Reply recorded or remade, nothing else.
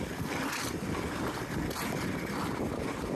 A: remade